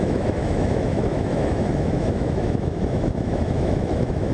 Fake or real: fake